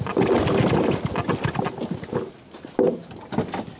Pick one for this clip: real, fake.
real